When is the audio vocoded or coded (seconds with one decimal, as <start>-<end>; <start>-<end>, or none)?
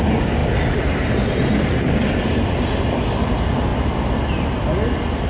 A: none